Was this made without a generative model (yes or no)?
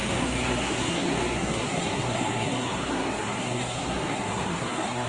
no